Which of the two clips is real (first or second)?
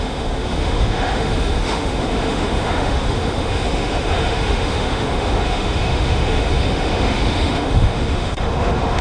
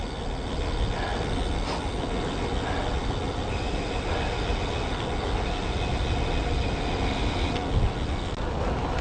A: second